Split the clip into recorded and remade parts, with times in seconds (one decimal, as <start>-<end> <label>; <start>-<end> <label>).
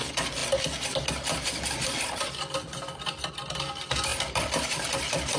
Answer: 0.0-4.1 recorded; 4.1-4.9 remade; 4.9-5.4 recorded